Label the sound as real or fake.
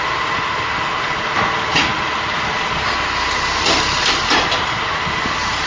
real